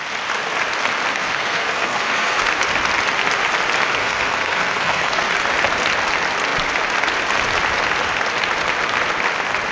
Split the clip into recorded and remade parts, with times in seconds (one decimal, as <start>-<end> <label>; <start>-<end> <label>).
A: 0.0-1.1 recorded; 1.1-2.4 remade; 2.4-4.0 recorded; 4.0-5.3 remade; 5.3-9.7 recorded